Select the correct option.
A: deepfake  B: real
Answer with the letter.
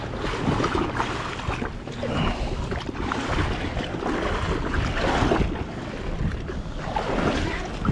B